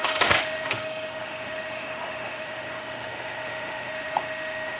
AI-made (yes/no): yes